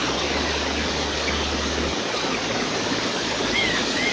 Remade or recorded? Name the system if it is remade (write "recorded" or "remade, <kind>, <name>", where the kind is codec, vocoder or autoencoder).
remade, codec, DAC